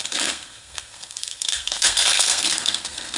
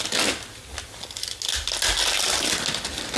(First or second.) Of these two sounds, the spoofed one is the first